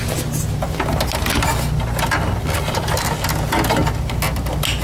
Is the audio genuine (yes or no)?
yes